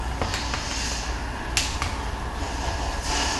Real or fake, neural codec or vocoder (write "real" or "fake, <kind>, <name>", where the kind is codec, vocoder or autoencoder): real